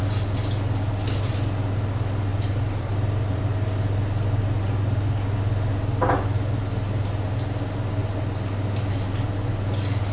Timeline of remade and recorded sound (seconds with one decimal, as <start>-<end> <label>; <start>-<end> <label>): 0.0-2.3 recorded; 2.3-3.4 remade; 3.4-10.1 recorded